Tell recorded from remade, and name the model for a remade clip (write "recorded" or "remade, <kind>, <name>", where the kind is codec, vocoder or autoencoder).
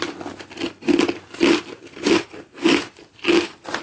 recorded